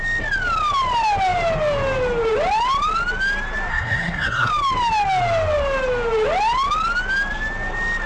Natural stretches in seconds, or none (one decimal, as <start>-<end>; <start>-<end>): 0.0-3.7; 4.5-8.1